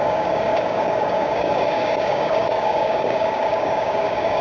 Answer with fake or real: fake